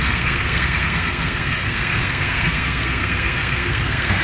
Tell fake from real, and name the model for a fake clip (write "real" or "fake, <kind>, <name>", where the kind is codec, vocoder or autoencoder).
fake, codec, SNAC